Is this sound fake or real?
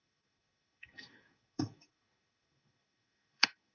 fake